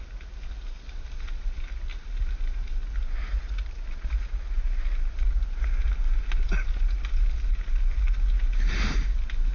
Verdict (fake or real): real